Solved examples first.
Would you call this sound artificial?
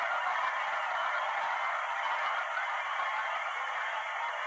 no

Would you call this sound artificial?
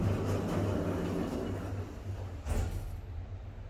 no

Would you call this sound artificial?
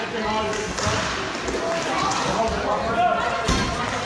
no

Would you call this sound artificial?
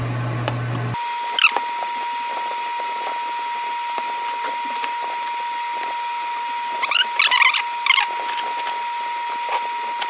no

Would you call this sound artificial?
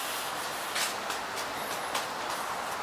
no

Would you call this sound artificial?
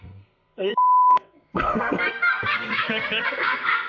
yes